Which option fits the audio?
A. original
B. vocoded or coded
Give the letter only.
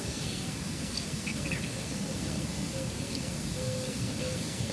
B